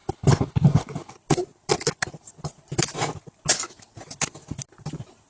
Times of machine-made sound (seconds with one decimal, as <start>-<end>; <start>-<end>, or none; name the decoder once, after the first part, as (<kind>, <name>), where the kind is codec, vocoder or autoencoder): 0.0-1.1 (codec, HILCodec)